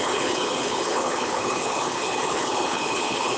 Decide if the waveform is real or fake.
fake